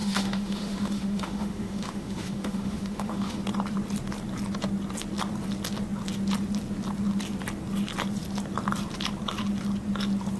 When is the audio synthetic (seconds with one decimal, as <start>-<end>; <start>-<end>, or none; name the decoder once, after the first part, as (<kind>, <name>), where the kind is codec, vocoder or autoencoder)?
0.0-3.4 (autoencoder, DAC-VAE)